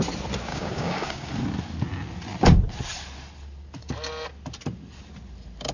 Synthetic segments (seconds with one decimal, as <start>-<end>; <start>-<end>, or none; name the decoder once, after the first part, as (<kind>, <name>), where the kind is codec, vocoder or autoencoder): 0.5-1.3 (codec, DAC)